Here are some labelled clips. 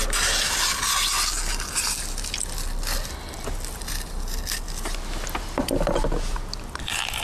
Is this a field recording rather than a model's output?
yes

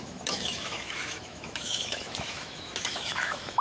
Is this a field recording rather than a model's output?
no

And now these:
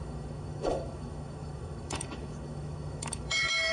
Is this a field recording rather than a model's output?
no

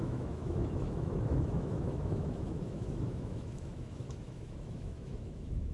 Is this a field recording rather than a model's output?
no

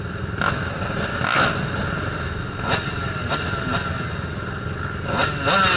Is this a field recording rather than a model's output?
yes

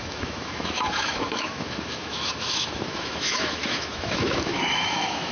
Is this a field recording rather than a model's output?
no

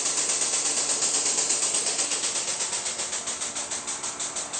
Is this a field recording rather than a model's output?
yes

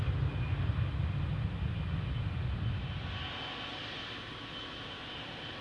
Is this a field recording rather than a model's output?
yes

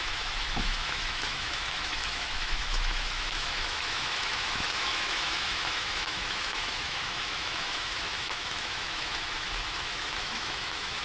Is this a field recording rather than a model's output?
no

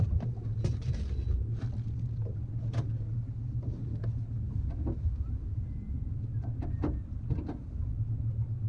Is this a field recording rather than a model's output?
yes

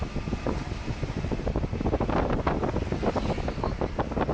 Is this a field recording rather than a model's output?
yes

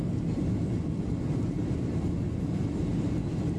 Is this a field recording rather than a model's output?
yes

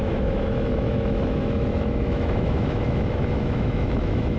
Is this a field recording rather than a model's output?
no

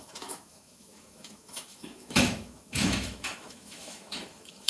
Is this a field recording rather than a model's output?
no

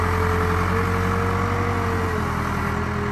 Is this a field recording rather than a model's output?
yes